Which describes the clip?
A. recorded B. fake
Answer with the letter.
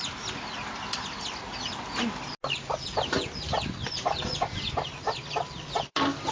A